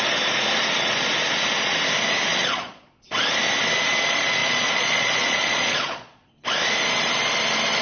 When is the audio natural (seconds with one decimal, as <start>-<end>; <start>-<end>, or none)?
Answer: 0.0-2.3; 3.0-4.4; 6.3-7.8